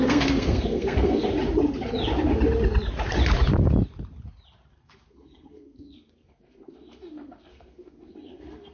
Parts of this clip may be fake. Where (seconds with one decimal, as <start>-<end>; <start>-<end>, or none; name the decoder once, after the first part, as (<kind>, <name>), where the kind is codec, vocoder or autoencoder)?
0.0-1.3 (codec, SNAC); 4.7-8.7